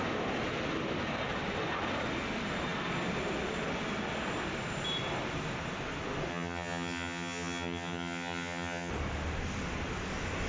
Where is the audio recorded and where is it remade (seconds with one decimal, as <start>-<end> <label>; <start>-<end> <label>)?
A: 0.0-6.3 recorded; 6.3-8.9 remade; 8.9-10.5 recorded